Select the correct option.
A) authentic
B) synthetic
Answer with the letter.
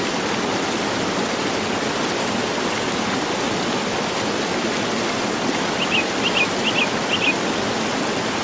A